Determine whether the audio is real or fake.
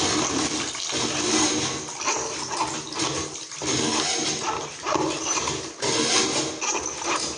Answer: real